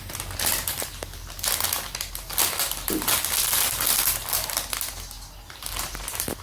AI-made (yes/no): no